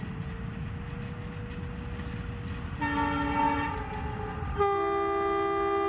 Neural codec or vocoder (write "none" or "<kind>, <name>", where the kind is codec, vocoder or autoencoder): none